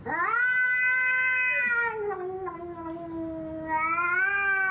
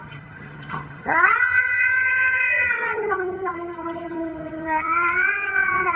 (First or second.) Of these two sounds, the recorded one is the first